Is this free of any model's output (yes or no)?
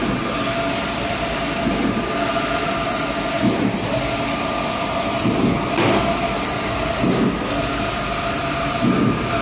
yes